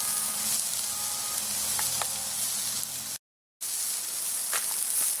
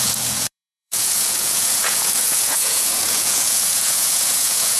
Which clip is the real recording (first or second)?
first